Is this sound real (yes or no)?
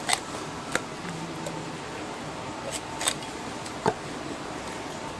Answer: yes